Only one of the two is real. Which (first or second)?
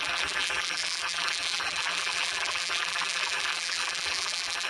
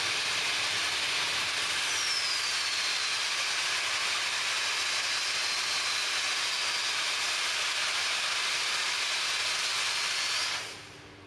second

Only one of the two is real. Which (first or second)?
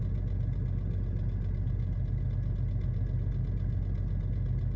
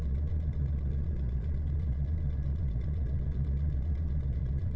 first